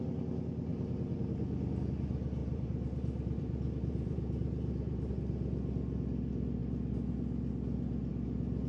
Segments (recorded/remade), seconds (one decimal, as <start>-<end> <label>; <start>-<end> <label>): 0.0-0.7 recorded; 0.7-1.2 remade; 1.2-2.4 recorded; 2.4-5.1 remade; 5.1-8.7 recorded